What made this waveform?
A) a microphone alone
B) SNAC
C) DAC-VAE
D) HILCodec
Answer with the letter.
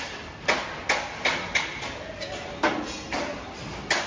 A